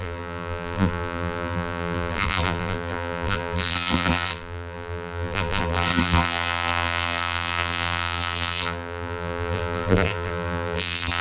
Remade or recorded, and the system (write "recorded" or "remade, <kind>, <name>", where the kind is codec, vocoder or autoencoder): remade, vocoder, BigVGAN v2